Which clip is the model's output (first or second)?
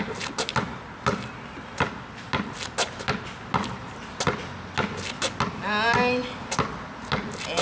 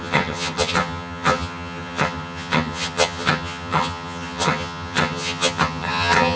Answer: second